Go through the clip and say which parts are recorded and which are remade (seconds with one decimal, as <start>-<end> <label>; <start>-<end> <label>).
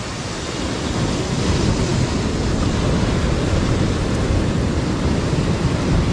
0.0-6.1 recorded